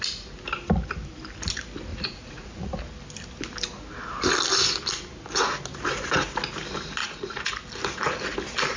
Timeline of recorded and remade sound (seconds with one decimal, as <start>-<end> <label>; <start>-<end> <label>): 0.0-1.9 recorded; 1.9-2.7 remade; 2.7-7.0 recorded; 7.0-7.5 remade; 7.5-8.8 recorded